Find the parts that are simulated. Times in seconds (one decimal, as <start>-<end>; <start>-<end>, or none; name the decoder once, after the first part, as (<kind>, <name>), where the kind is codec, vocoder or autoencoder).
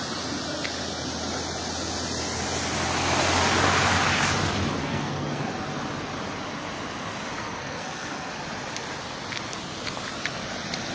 4.8-5.5 (codec, SNAC); 7.4-8.3